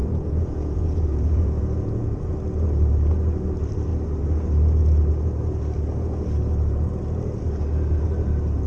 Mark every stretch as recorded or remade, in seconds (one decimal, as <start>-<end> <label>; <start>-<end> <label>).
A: 0.0-2.3 remade; 2.3-8.7 recorded